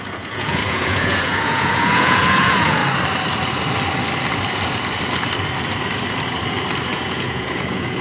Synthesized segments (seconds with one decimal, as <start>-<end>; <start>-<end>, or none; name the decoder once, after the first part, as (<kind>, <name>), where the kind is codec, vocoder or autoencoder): 0.0-2.8 (vocoder, Vocos); 6.9-8.0